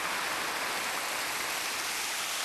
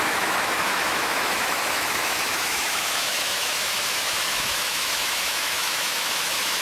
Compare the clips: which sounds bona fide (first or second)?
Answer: first